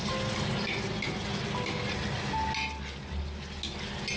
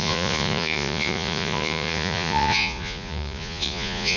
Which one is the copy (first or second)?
second